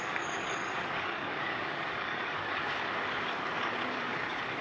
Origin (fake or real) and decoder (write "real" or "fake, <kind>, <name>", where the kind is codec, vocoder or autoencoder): fake, codec, DAC